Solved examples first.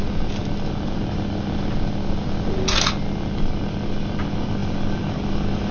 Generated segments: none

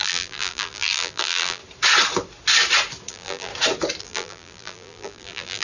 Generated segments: 0.0-1.6 (vocoder, BigVGAN v2); 3.1-3.5; 4.0-5.6

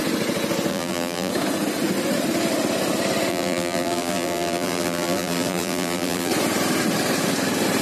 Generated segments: 0.7-1.3 (vocoder, BigVGAN v2); 3.3-6.3

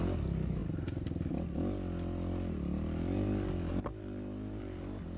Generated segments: none

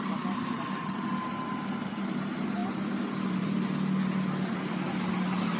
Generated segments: none